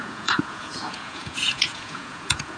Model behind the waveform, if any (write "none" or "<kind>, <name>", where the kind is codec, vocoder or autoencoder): vocoder, Vocos